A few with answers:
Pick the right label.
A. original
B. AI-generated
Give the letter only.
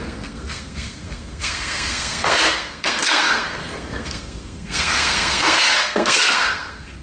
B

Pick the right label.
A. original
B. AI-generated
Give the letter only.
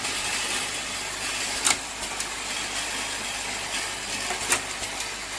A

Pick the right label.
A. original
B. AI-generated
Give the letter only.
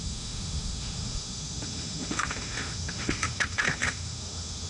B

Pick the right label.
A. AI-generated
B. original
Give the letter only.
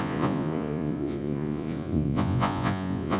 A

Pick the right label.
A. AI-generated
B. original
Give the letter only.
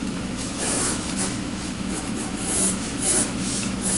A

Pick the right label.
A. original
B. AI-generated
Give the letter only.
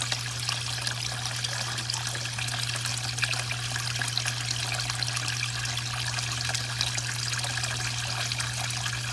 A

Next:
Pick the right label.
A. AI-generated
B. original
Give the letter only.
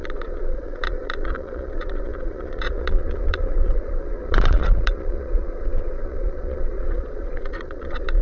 A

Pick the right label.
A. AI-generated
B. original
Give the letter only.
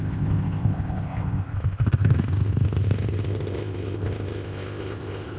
A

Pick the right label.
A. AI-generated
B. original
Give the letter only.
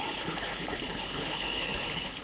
A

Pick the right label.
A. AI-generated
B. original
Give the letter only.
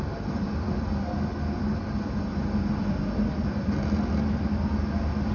B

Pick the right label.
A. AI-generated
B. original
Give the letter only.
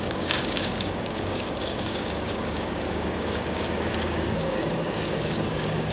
A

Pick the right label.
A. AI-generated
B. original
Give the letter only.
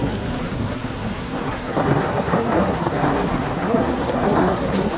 A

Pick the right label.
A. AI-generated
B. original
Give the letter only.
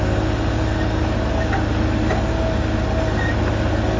B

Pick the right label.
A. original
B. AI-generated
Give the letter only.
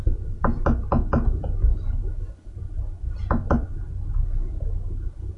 A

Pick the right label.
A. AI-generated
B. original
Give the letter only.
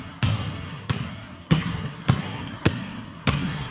A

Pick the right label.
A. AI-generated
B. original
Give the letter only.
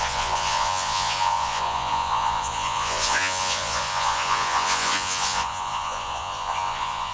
A